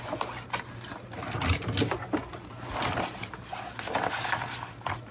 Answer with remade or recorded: recorded